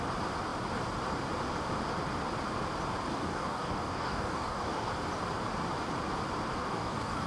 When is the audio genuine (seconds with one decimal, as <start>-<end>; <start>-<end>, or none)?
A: 0.0-3.1; 4.9-6.6